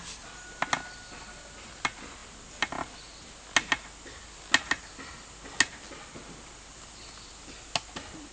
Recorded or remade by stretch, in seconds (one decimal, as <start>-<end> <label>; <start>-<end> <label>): 0.0-8.3 recorded